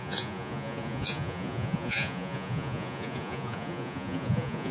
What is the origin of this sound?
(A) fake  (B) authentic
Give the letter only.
A